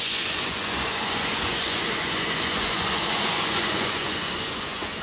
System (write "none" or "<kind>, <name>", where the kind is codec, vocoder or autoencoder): vocoder, Vocos